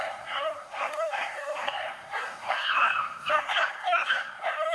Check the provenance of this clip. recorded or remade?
remade